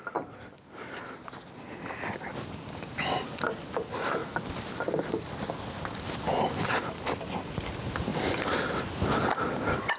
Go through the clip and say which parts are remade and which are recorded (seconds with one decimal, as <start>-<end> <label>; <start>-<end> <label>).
0.0-10.0 recorded